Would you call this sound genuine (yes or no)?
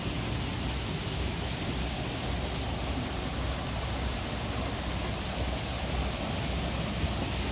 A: yes